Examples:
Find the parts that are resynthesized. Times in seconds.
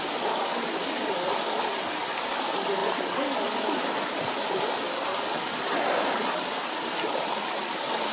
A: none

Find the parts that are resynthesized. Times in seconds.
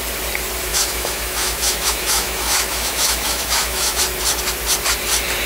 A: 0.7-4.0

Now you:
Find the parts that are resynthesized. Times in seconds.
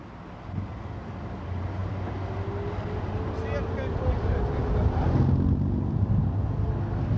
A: none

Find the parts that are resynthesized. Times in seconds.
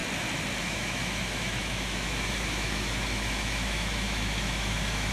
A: 0.6-5.1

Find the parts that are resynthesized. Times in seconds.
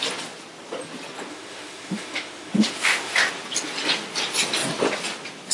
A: 1.3-3.3